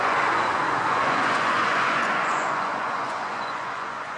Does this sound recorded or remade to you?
remade